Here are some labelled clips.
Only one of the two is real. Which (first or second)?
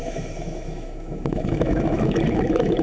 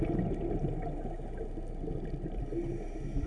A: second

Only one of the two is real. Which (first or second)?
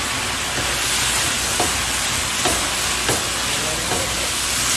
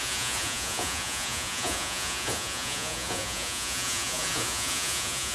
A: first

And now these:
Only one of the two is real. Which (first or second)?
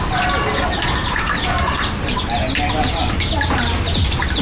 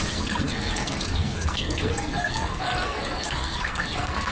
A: first